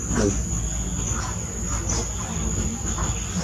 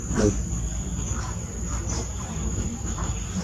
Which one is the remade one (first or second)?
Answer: second